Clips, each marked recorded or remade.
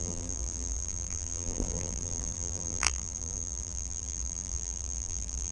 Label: remade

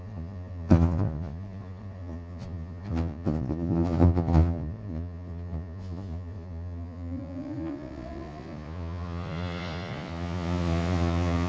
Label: remade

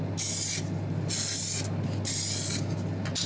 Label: recorded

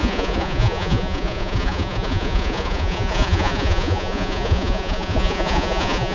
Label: remade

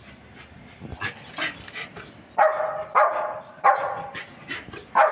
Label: recorded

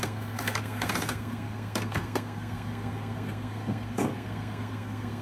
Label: remade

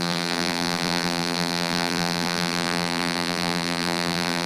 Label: remade